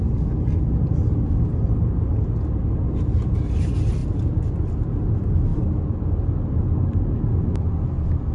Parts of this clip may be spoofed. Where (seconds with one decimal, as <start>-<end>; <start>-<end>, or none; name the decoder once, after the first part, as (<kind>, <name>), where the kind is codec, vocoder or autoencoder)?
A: none